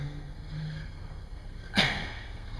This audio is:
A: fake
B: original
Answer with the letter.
A